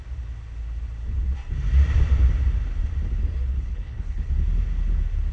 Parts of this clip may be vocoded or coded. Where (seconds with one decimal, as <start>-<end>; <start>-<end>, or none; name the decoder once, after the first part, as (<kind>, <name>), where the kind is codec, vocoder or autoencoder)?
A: 3.5-4.3 (codec, HILCodec)